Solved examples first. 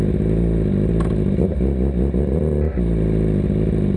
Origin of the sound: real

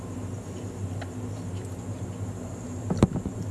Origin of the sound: real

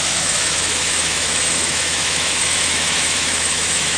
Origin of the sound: fake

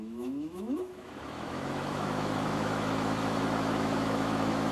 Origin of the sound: fake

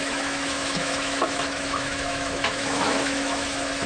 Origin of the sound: fake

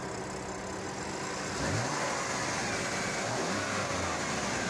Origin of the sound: real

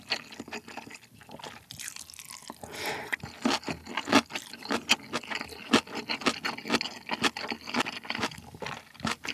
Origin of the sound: real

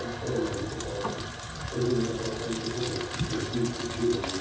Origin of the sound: real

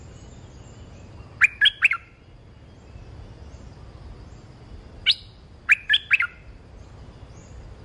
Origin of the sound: real